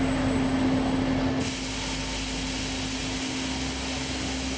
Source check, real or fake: real